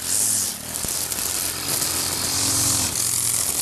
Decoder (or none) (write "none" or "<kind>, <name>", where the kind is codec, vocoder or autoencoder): none